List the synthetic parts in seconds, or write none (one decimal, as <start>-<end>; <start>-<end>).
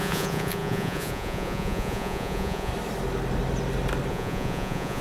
0.0-2.7; 4.1-5.0